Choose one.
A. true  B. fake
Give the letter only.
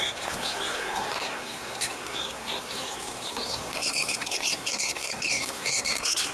B